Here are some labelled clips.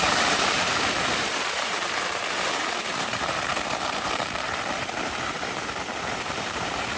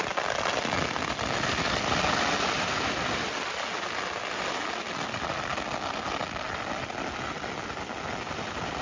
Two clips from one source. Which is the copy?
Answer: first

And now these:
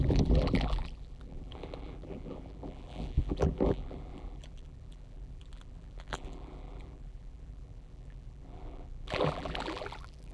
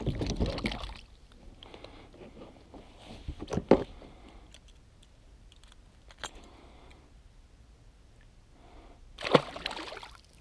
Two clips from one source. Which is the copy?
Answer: first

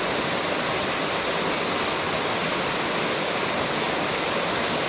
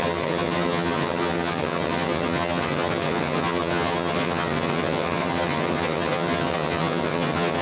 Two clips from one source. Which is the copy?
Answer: second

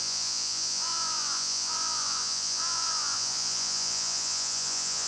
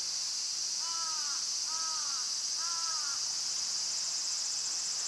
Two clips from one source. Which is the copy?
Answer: first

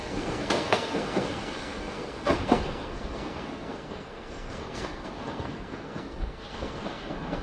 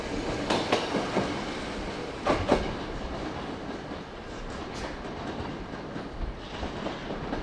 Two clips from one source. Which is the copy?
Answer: first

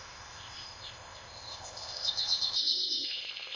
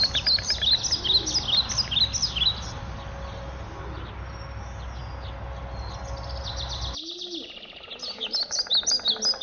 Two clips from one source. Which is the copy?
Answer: first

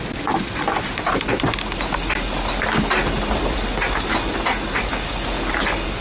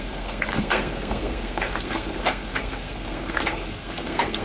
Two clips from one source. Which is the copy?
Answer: second